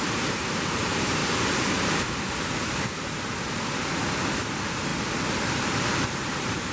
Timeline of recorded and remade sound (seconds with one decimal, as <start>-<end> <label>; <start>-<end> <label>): 0.0-1.2 remade; 1.2-2.4 recorded; 2.4-4.9 remade; 4.9-5.8 recorded; 5.8-6.7 remade